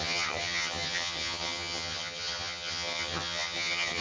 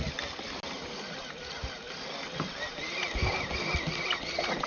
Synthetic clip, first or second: first